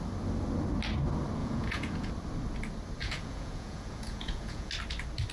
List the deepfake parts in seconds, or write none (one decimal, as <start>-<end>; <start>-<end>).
1.4-2.1; 3.0-4.7